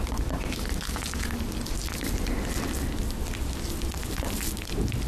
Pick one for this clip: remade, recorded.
recorded